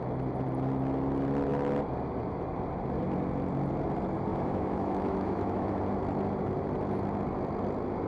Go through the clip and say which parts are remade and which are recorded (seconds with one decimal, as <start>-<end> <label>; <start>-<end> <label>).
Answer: 0.0-4.3 recorded; 4.3-5.8 remade; 5.8-8.1 recorded